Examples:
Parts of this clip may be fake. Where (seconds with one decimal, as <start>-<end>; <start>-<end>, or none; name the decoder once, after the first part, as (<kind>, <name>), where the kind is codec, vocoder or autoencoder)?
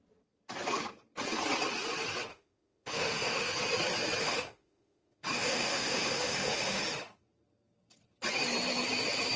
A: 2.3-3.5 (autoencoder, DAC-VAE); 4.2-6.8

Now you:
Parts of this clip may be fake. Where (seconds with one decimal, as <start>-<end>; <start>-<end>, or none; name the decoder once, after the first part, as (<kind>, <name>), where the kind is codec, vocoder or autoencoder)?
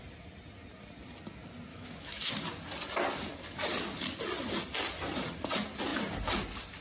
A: 1.7-2.3 (autoencoder, DAC-VAE)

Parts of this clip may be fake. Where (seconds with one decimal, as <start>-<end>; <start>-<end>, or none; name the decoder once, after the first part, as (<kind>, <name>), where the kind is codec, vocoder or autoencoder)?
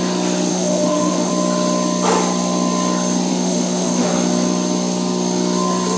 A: 0.5-1.3 (autoencoder, DAC-VAE); 3.3-4.1